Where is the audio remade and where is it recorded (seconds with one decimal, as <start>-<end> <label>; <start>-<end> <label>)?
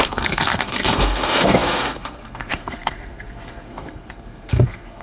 0.0-5.0 remade